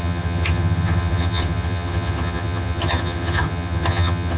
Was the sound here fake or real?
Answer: fake